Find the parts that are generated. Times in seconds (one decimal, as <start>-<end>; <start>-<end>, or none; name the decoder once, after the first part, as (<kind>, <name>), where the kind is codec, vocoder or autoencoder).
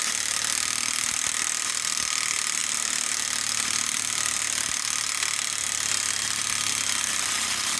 none